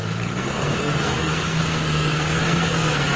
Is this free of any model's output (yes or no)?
no